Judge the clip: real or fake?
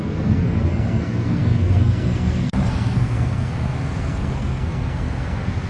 fake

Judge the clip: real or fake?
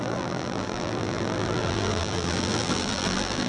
fake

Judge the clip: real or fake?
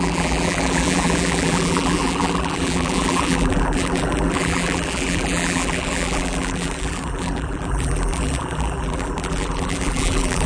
fake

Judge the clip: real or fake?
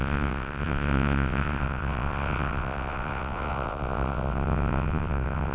fake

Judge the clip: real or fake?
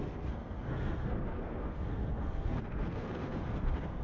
fake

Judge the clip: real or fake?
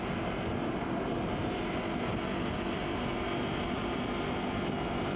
real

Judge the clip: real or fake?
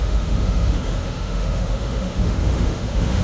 fake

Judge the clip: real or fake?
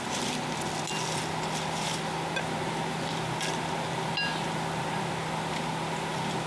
real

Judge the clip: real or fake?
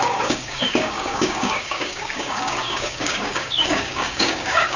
fake